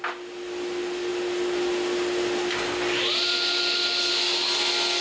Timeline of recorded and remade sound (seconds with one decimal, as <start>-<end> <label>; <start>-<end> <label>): 0.0-5.0 recorded